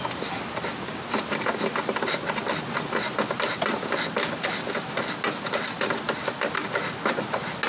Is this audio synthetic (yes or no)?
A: no